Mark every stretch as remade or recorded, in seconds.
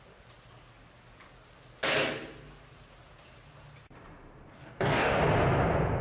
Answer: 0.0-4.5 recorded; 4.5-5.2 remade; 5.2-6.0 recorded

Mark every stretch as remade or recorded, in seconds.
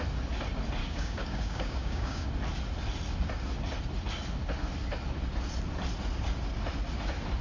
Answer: 0.0-0.8 recorded; 0.8-2.3 remade; 2.3-7.4 recorded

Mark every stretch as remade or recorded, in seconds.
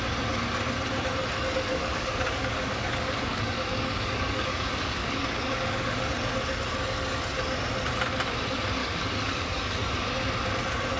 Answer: 0.0-1.7 recorded; 1.7-6.1 remade; 6.1-8.8 recorded; 8.8-9.6 remade; 9.6-11.0 recorded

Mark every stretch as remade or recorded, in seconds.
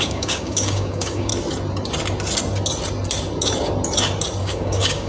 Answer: 0.0-1.3 remade; 1.3-4.4 recorded; 4.4-5.1 remade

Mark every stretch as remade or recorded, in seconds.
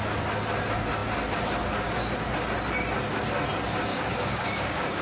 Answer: 0.0-3.9 recorded; 3.9-5.0 remade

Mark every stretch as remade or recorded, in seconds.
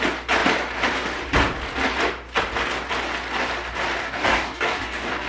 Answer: 0.0-4.0 recorded; 4.0-5.3 remade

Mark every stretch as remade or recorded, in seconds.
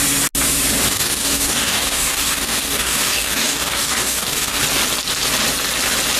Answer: 0.0-0.9 recorded; 0.9-4.6 remade; 4.6-6.2 recorded